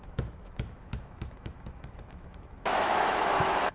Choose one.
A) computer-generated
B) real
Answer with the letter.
A